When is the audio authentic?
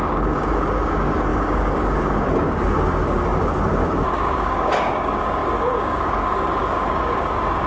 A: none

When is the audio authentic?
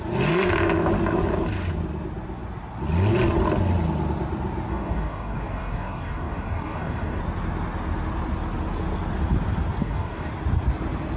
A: 0.0-4.7; 7.2-9.8; 10.3-11.2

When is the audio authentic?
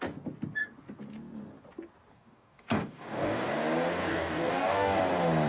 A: 0.0-2.1; 3.5-4.0; 5.0-5.5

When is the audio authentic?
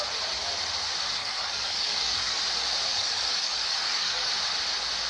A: 0.0-1.2; 2.4-2.9; 4.3-5.1